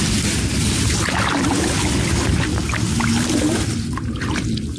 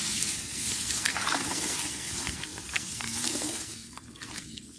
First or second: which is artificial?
second